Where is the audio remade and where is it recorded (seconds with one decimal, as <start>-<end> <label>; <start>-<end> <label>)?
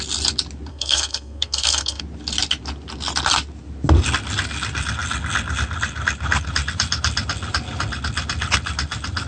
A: 0.0-0.7 recorded; 0.7-2.0 remade; 2.0-9.3 recorded